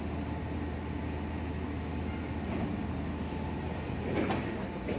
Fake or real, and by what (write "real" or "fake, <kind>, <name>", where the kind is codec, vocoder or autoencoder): real